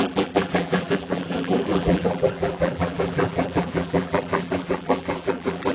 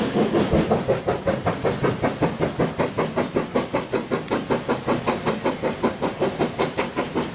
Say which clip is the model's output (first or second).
first